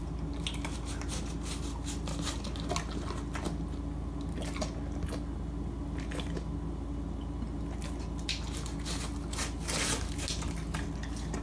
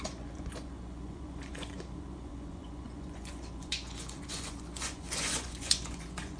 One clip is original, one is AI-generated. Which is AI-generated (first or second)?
second